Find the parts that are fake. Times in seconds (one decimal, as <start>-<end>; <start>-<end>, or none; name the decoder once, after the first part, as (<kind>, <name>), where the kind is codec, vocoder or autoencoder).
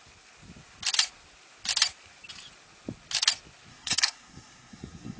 3.7-5.2 (codec, SNAC)